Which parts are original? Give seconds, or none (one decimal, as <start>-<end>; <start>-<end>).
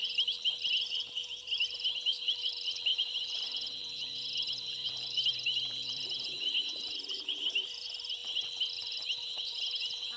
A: 0.0-0.9; 2.2-3.0; 8.2-8.8